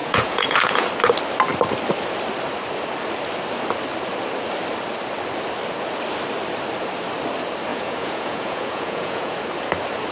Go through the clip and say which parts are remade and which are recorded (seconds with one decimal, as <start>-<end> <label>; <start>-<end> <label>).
0.0-0.9 remade; 0.9-7.7 recorded; 7.7-9.4 remade; 9.4-10.1 recorded